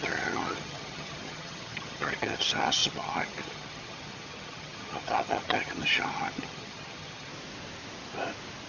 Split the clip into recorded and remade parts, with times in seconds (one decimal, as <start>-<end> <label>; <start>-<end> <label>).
0.0-7.3 remade; 7.3-8.7 recorded